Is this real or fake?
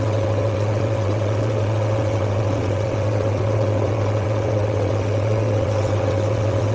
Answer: fake